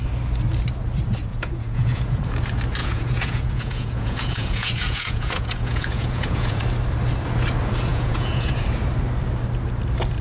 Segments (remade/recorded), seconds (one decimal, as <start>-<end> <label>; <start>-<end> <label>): 0.0-1.3 recorded; 1.3-2.2 remade; 2.2-2.8 recorded; 2.8-6.6 remade; 6.6-7.9 recorded; 7.9-8.5 remade; 8.5-10.2 recorded